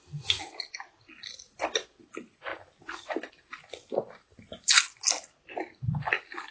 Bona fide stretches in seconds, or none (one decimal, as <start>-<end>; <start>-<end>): 0.0-6.5